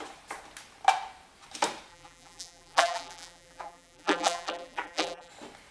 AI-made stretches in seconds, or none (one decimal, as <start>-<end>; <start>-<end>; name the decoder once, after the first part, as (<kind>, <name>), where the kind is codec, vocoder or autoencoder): 1.9-5.3 (vocoder, BigVGAN v2)